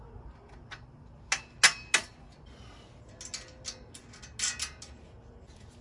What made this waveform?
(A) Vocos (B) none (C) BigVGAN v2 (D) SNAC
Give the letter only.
B